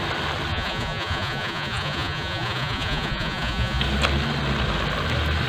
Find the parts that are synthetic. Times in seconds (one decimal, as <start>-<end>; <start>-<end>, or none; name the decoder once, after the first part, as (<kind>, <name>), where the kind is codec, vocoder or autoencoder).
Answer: 0.5-3.8 (vocoder, Vocos)